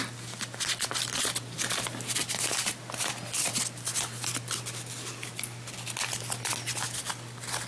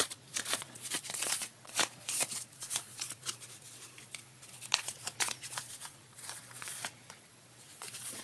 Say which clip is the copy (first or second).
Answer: second